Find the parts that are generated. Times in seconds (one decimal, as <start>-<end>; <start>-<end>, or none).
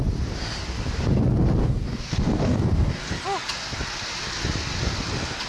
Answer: 1.6-3.0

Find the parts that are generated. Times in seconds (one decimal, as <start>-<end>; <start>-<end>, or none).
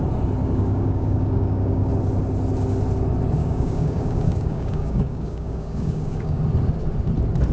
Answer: 0.4-1.9; 3.4-6.4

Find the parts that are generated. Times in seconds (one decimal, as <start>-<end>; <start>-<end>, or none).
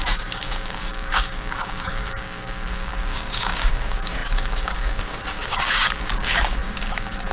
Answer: 0.0-7.3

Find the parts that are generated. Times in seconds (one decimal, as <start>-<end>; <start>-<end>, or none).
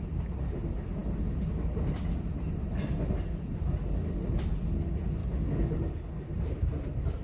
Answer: none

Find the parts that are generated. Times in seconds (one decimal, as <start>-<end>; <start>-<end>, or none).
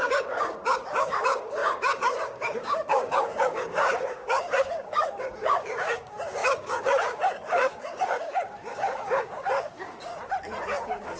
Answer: 0.0-10.1; 10.6-11.2